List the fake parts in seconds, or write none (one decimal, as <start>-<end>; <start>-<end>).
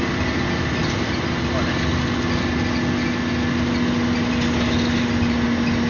none